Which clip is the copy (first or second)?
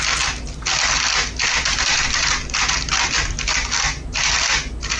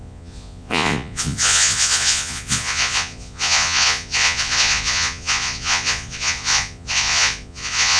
second